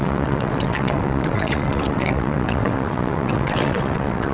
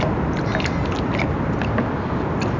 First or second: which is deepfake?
first